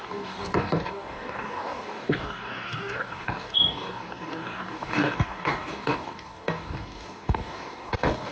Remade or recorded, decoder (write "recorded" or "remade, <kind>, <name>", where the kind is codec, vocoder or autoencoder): remade, codec, DAC